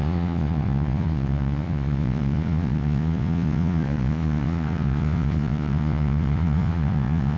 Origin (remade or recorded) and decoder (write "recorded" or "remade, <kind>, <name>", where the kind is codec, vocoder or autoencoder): remade, vocoder, Vocos